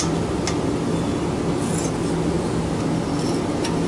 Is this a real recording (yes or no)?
yes